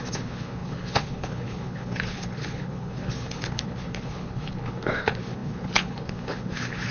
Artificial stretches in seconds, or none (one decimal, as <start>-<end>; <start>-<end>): 0.0-6.9